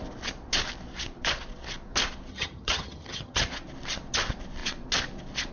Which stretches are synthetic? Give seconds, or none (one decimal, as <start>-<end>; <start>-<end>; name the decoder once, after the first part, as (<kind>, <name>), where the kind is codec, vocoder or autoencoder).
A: 2.3-3.4 (vocoder, HiFi-GAN)